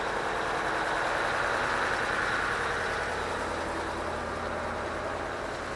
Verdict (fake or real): real